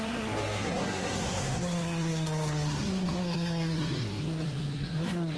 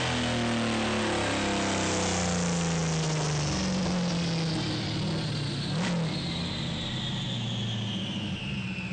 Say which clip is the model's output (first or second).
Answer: first